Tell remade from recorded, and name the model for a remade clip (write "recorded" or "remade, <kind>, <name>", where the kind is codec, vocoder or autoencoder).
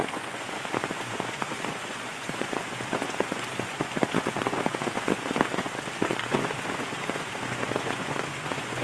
remade, vocoder, Vocos